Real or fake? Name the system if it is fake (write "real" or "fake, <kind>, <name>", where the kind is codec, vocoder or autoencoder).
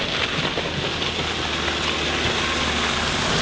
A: real